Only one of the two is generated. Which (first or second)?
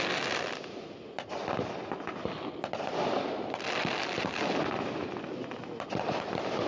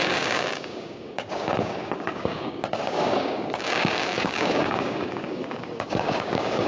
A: second